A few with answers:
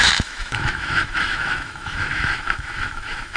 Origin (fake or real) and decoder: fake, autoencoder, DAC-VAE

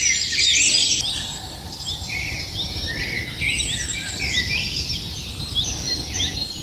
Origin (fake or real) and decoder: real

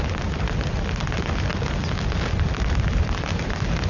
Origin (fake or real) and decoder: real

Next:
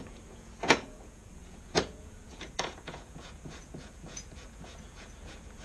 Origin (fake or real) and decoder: fake, vocoder, Vocos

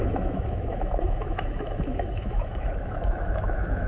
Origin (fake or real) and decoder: fake, autoencoder, DAC-VAE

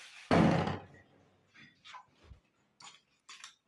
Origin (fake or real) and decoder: real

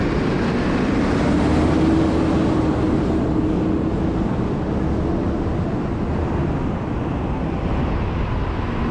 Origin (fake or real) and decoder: real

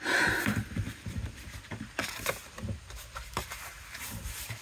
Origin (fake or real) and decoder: fake, vocoder, BigVGAN v2